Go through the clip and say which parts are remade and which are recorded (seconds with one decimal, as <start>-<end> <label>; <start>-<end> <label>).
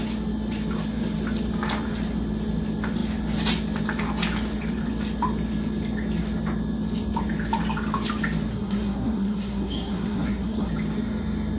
0.0-8.5 recorded; 8.5-10.7 remade; 10.7-11.6 recorded